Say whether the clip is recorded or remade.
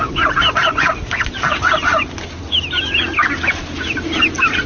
recorded